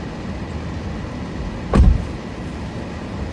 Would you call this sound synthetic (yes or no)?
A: no